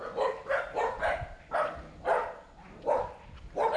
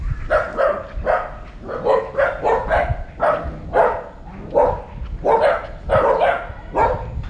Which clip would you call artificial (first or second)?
first